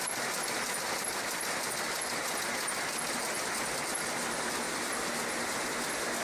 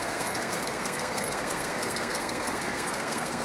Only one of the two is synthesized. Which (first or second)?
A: second